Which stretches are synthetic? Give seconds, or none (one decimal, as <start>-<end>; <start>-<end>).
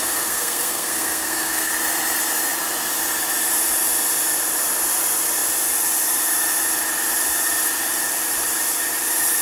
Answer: 0.0-1.7